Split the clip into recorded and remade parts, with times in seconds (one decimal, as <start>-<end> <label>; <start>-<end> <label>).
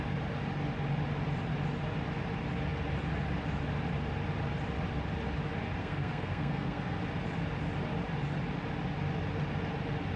0.0-5.8 recorded; 5.8-7.0 remade; 7.0-10.2 recorded